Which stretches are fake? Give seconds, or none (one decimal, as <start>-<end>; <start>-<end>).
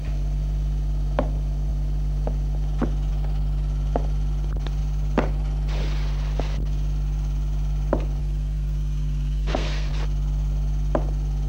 8.2-9.9